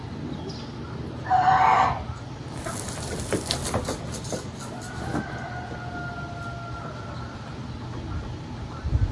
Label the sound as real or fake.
real